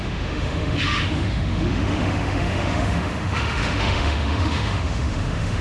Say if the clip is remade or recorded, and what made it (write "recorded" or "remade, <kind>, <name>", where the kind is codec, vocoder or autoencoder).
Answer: remade, autoencoder, DAC-VAE